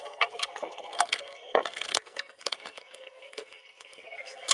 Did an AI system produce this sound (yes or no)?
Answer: yes